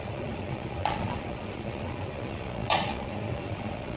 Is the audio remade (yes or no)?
yes